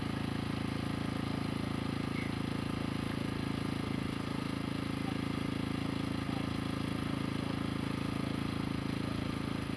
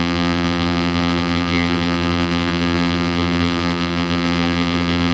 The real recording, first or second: first